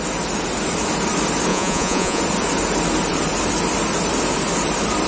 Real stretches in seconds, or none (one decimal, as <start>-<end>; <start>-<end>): 0.0-1.5; 2.2-5.1